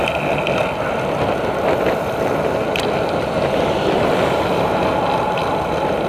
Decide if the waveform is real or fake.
real